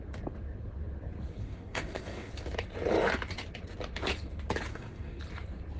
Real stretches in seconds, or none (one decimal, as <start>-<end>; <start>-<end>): 0.0-1.4; 2.3-4.7; 5.2-5.8

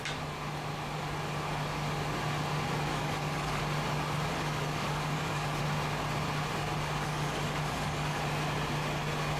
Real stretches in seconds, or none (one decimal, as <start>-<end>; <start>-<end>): 0.0-2.9; 3.6-4.3; 5.6-7.0; 8.2-9.4

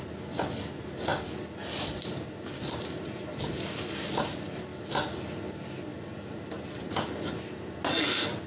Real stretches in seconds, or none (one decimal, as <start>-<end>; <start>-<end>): 0.0-8.5

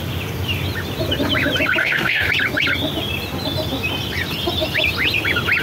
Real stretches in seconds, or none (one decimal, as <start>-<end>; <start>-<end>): 0.0-1.8; 2.3-5.6

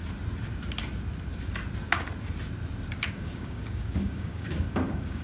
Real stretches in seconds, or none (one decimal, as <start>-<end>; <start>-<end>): 0.0-3.1

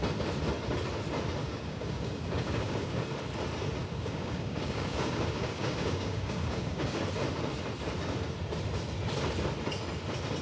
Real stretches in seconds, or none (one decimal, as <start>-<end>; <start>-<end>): 0.0-1.4; 3.0-3.8; 7.0-10.4